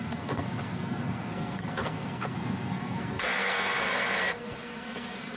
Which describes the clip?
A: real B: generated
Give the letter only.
B